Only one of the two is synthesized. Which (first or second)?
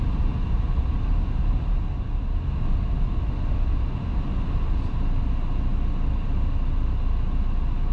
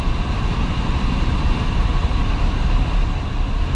second